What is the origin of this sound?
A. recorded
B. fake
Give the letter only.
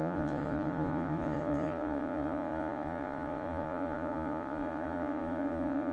B